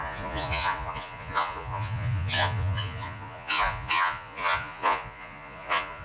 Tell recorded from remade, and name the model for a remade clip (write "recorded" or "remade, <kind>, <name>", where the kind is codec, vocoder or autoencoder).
remade, vocoder, Vocos